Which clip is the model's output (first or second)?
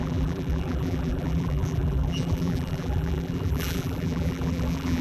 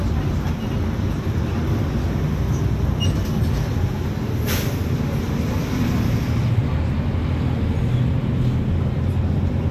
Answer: first